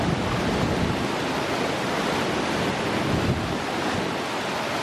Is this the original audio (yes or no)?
yes